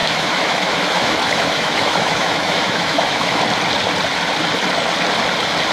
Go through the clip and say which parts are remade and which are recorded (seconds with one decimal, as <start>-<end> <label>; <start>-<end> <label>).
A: 0.0-3.4 remade; 3.4-5.7 recorded